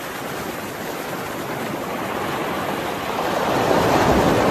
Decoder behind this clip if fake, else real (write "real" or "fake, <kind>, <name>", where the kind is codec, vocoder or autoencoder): real